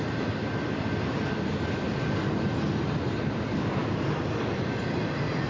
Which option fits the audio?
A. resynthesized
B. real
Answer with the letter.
B